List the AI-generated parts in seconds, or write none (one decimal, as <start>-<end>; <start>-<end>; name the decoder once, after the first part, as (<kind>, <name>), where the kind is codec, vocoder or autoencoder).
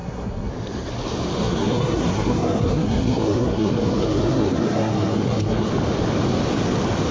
0.0-0.5 (codec, SNAC); 1.4-5.7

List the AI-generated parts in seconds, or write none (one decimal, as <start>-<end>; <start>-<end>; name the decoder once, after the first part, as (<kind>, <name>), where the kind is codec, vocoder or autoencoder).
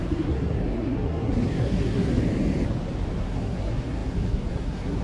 0.0-2.2 (codec, SNAC); 3.2-5.0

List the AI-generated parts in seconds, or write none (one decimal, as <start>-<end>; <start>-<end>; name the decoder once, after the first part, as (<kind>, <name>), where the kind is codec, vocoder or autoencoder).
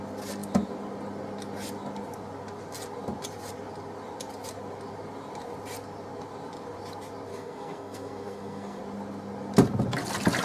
7.3-8.8 (codec, SNAC)